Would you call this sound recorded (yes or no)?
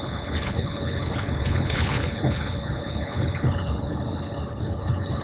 no